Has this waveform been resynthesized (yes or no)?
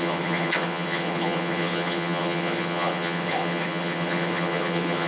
yes